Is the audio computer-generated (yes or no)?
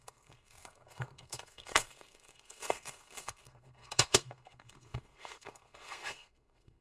yes